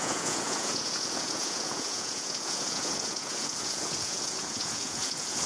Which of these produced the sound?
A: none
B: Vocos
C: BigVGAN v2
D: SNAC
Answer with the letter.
B